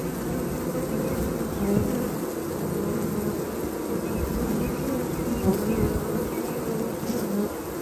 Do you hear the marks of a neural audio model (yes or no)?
no